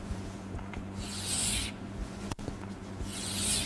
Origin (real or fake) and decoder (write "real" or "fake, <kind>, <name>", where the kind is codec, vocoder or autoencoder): fake, vocoder, Vocos